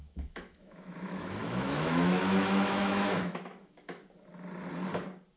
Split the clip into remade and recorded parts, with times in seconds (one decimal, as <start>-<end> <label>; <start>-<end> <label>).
0.0-4.0 remade; 4.0-5.4 recorded